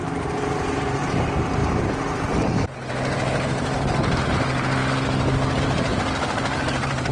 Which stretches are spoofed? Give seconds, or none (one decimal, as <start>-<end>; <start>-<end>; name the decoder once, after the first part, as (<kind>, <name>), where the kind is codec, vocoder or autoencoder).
0.0-4.8 (vocoder, BigVGAN v2); 5.6-7.1